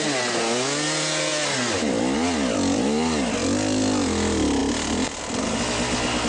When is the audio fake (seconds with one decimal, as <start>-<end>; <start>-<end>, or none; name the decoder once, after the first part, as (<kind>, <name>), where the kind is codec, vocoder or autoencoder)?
none